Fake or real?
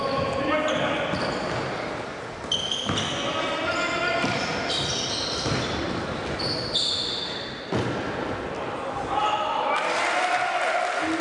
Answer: real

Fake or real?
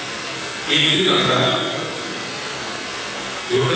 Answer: fake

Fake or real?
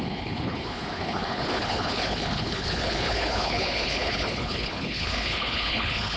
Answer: fake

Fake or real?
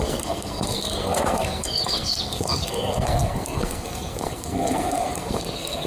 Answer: fake